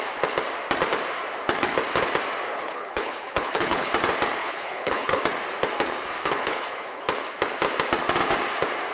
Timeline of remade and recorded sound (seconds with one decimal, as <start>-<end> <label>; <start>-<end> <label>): 0.0-2.5 recorded; 2.5-3.9 remade; 3.9-4.4 recorded; 4.4-5.2 remade; 5.2-6.2 recorded; 6.2-7.0 remade; 7.0-8.9 recorded